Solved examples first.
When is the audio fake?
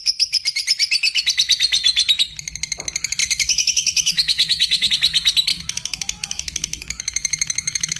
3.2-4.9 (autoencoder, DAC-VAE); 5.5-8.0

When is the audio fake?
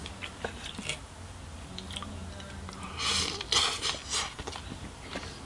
none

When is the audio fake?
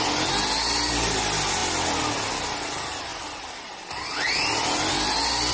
none